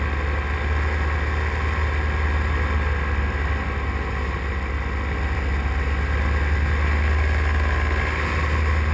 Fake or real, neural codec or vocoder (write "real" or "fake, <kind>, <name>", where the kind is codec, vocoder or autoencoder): real